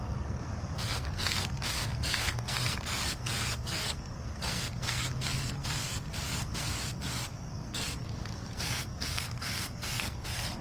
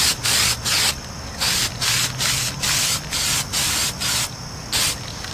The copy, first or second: first